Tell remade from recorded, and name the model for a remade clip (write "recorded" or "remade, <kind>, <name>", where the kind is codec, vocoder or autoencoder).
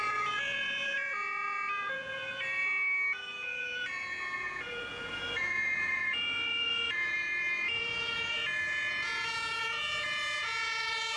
remade, vocoder, Vocos